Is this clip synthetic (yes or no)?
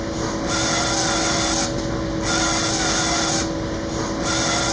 no